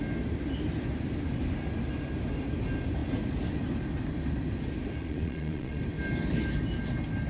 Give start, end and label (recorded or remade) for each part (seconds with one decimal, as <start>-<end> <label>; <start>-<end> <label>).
0.0-5.0 recorded; 5.0-5.8 remade; 5.8-7.3 recorded